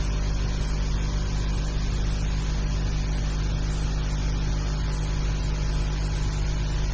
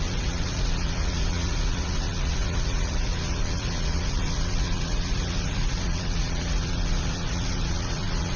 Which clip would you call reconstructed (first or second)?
second